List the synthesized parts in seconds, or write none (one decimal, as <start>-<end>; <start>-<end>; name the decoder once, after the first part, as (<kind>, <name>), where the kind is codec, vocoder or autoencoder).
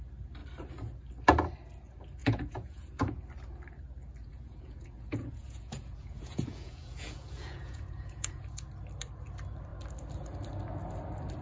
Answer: 2.2-3.1 (vocoder, Vocos); 4.2-8.4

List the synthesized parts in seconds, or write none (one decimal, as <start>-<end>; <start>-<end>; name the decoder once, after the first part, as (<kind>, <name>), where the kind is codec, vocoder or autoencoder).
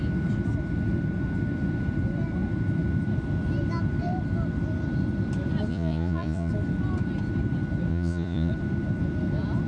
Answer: 5.7-6.5 (vocoder, Vocos); 7.9-8.5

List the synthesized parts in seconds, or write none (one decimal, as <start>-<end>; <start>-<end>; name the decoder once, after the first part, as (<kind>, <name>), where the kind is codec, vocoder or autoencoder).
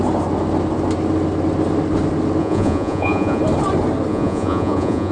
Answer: 2.4-3.4 (vocoder, Vocos); 4.1-5.1